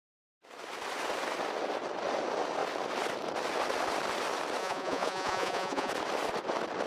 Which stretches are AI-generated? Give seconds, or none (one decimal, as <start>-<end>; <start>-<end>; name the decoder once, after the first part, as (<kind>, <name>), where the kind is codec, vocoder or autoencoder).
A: 4.6-5.9 (vocoder, Vocos)

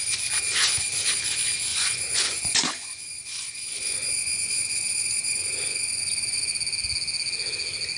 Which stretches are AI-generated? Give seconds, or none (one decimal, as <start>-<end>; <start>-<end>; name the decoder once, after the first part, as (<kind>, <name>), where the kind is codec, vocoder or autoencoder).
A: 1.7-6.5 (vocoder, Vocos)

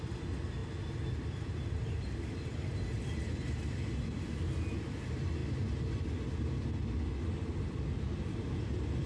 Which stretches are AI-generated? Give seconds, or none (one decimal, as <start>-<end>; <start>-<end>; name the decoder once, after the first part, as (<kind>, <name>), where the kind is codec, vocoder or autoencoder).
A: none

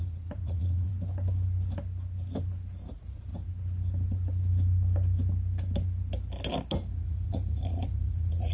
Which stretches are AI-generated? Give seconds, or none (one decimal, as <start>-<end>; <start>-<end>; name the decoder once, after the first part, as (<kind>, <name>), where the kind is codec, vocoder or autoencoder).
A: 0.0-0.9 (vocoder, Vocos); 2.9-3.3; 6.9-8.5

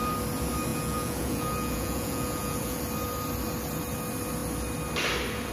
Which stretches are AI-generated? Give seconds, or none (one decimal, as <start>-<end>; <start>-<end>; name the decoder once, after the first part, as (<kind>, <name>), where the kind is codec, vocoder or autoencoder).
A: 0.7-2.8 (vocoder, Vocos)